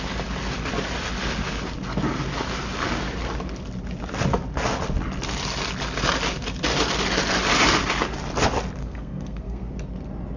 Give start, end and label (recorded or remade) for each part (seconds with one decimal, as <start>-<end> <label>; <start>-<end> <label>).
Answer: 0.0-8.8 recorded; 8.8-9.7 remade; 9.7-10.4 recorded